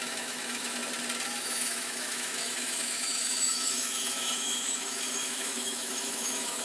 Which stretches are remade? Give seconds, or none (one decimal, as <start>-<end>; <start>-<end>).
0.0-0.8; 1.4-6.6